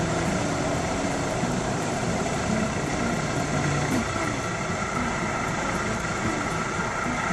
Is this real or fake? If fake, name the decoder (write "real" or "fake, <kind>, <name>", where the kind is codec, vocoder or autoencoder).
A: fake, vocoder, BigVGAN v2